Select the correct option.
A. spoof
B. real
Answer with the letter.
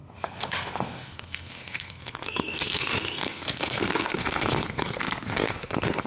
A